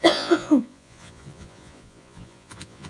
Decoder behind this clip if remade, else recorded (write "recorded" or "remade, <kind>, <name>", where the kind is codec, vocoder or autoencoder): remade, vocoder, Vocos